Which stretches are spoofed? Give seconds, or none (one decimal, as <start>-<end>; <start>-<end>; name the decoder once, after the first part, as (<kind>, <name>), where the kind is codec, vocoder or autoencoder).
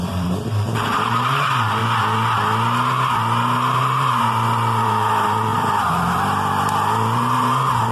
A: 0.0-1.8 (vocoder, BigVGAN v2); 3.8-7.9